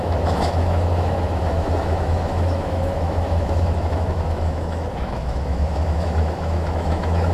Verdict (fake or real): fake